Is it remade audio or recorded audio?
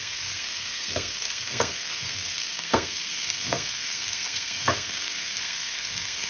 remade